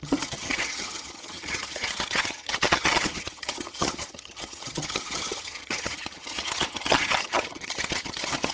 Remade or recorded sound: remade